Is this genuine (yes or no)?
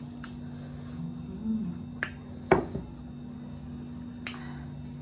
yes